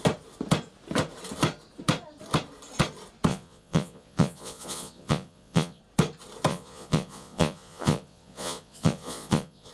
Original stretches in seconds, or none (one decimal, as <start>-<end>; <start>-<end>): 0.0-3.3; 5.8-6.5